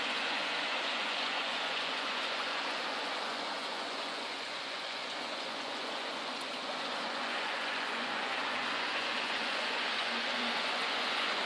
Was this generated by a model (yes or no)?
yes